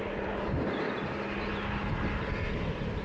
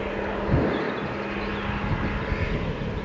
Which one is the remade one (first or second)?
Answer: first